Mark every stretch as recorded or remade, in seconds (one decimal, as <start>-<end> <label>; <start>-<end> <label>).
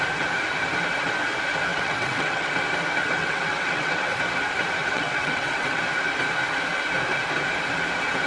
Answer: 0.0-1.7 recorded; 1.7-2.5 remade; 2.5-3.2 recorded; 3.2-4.2 remade; 4.2-4.8 recorded; 4.8-5.8 remade; 5.8-8.3 recorded